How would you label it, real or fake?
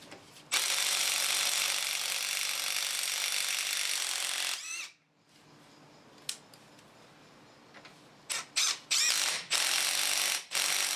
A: real